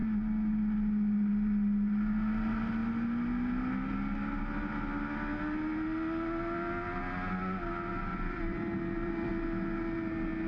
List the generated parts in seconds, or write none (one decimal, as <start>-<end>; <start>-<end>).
8.1-9.3